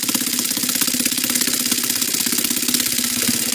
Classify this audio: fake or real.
real